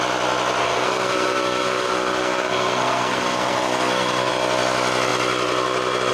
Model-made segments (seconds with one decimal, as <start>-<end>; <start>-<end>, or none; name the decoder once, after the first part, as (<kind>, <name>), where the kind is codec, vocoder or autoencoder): 0.6-4.3 (codec, SNAC)